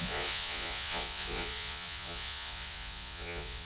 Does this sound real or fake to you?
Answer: fake